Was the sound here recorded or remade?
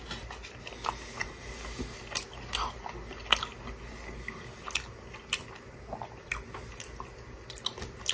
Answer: recorded